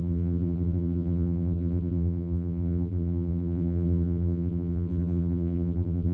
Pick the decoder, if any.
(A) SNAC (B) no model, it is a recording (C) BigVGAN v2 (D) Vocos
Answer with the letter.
C